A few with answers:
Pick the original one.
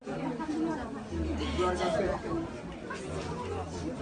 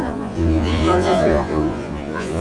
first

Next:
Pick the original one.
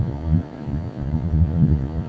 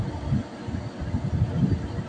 second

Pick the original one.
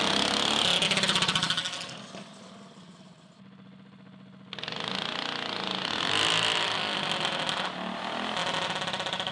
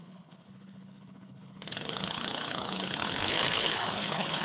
first